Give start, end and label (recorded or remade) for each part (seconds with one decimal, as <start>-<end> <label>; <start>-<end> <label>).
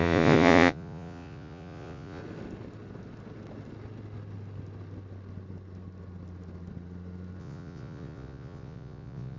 0.0-2.2 remade; 2.2-7.4 recorded; 7.4-9.4 remade